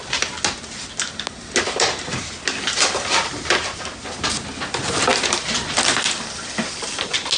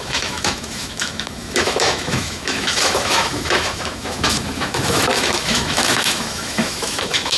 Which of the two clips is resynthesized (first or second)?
second